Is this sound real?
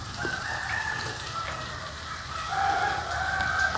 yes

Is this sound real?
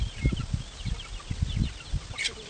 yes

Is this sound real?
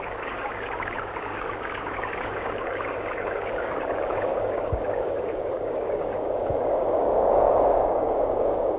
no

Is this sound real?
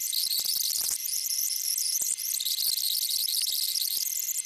yes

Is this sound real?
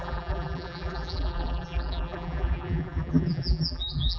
no